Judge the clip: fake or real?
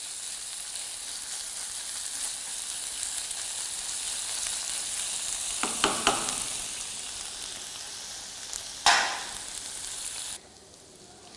real